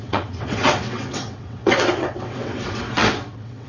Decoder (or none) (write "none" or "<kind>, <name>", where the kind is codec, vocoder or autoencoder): vocoder, WaveNeXt